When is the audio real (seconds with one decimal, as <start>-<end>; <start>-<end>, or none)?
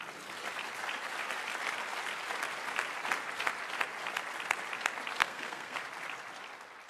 0.0-5.2; 5.8-6.9